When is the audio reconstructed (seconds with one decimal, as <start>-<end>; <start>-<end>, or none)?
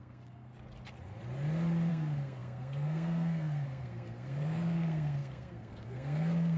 0.0-0.5; 1.9-6.6